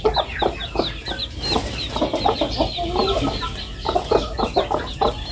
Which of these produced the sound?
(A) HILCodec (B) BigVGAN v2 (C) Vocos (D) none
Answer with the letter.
D